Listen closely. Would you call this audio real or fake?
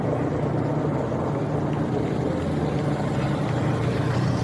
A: real